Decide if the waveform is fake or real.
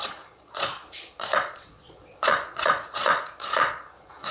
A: fake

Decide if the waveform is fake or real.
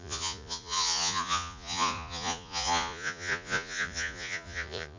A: fake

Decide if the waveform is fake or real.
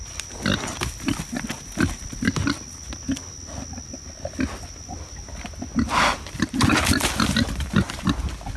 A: real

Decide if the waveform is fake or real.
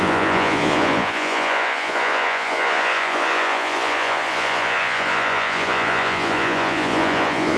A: fake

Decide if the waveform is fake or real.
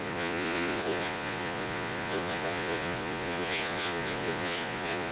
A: fake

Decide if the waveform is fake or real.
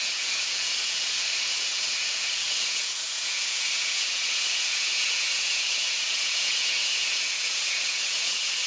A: fake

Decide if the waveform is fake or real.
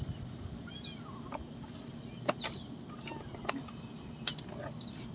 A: real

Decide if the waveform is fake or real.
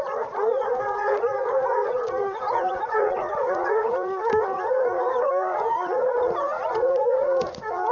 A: fake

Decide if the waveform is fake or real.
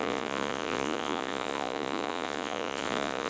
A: fake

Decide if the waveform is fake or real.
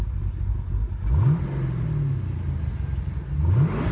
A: real